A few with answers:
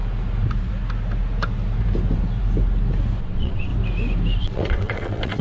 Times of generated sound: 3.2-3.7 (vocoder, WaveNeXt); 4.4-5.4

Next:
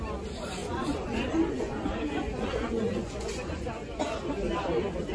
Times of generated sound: 0.6-3.7 (vocoder, Vocos)

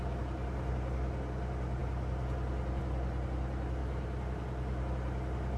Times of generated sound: none

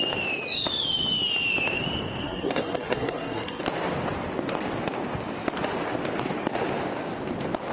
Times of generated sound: 2.2-3.6 (codec, SNAC)

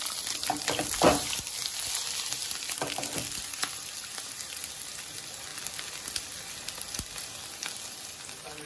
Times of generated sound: none

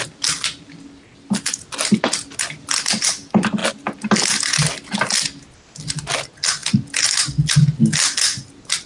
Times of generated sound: none

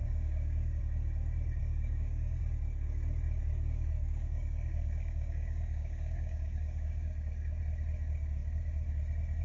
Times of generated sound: 0.0-0.8 (codec, DAC); 1.6-2.4; 3.4-7.6